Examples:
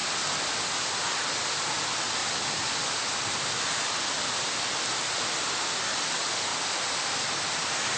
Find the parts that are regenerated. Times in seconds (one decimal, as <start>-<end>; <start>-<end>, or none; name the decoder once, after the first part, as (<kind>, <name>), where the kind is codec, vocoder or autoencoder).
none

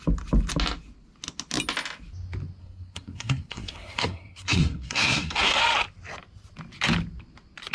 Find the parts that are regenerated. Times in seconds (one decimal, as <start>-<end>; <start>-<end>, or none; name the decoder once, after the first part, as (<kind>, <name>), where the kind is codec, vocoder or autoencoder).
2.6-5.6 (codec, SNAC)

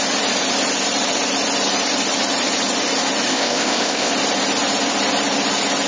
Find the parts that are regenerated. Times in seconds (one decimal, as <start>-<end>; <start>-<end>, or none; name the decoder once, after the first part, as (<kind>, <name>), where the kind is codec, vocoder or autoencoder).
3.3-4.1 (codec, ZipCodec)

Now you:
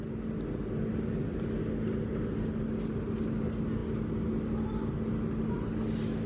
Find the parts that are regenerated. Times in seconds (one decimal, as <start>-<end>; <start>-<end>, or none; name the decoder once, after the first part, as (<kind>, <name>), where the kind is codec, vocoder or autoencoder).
none